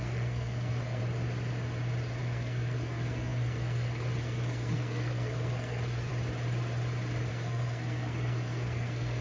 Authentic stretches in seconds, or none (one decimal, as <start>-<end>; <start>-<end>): 1.0-2.2; 6.1-7.3